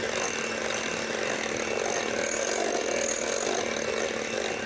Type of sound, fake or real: real